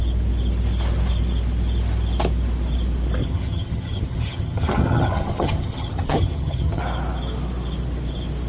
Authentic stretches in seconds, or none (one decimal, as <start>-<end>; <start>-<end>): 0.0-3.2; 6.8-8.5